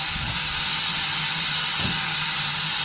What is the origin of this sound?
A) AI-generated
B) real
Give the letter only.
B